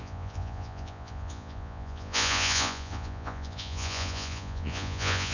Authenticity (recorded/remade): remade